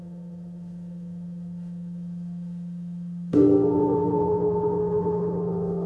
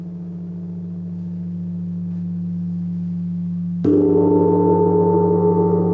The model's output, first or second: first